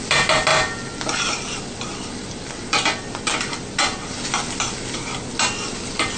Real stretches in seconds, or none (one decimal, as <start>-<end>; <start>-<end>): 0.0-6.2